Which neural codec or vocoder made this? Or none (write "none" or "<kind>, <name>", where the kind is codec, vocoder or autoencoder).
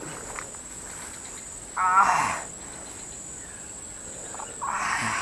none